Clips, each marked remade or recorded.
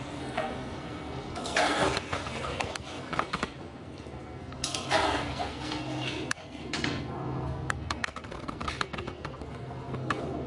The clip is remade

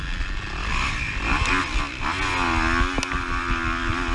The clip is recorded